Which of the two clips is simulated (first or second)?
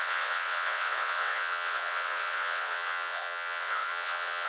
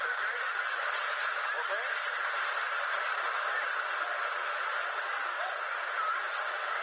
first